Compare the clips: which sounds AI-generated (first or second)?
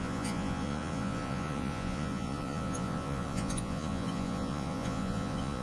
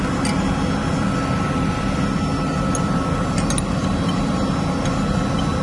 first